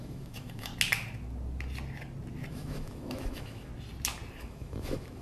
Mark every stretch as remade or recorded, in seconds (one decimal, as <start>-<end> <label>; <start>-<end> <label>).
0.0-0.7 remade; 0.7-2.5 recorded; 2.5-3.7 remade; 3.7-4.4 recorded; 4.4-5.2 remade